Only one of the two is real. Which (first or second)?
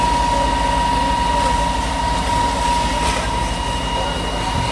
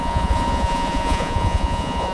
first